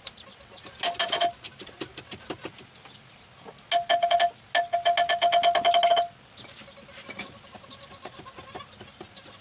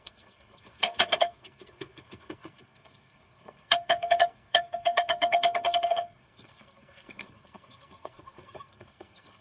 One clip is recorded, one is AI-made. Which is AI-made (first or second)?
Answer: second